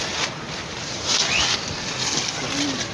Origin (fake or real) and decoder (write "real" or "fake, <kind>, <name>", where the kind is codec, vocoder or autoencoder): real